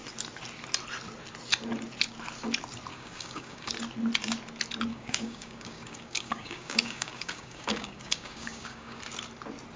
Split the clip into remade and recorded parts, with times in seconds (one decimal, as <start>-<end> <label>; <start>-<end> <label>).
0.0-2.9 recorded; 2.9-3.7 remade; 3.7-4.9 recorded; 4.9-9.0 remade; 9.0-9.8 recorded